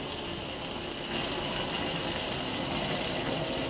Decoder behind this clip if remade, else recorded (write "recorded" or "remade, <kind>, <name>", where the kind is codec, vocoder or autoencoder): recorded